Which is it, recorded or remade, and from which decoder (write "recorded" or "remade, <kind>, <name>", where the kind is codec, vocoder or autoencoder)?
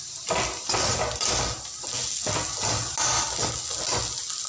recorded